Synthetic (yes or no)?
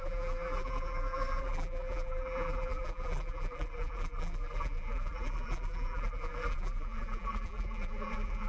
yes